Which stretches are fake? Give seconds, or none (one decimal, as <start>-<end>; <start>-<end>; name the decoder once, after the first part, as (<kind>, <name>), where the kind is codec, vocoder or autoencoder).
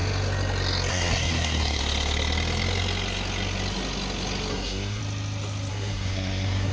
0.9-1.8 (codec, SNAC); 4.5-5.0; 5.7-6.7